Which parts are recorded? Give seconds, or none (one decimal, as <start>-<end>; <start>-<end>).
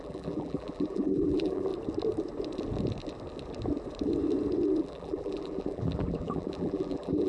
1.7-4.8